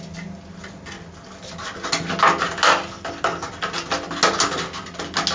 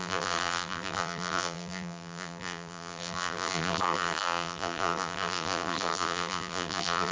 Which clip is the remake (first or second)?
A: second